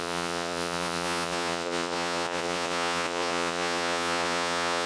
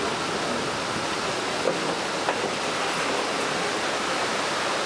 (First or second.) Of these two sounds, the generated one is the first